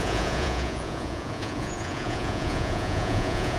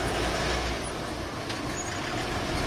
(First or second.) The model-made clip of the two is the first